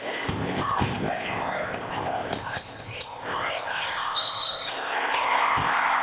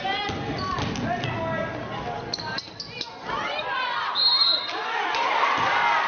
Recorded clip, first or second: second